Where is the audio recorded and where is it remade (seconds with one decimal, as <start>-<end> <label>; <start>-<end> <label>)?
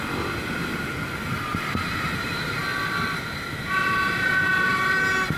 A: 0.0-1.5 recorded; 1.5-2.6 remade; 2.6-5.4 recorded